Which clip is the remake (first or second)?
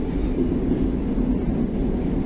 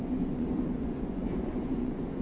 second